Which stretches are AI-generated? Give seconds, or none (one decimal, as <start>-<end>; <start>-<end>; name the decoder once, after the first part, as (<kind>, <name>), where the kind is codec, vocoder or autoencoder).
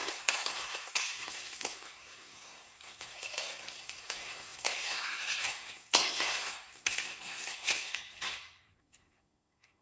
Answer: 0.0-9.8 (codec, SNAC)